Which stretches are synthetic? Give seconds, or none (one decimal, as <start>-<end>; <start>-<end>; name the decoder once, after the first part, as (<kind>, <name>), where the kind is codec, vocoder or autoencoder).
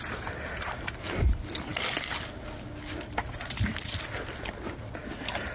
none